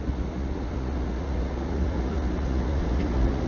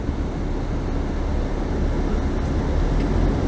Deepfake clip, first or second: first